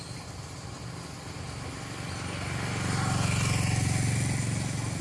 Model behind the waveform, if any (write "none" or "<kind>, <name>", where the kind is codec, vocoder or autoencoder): none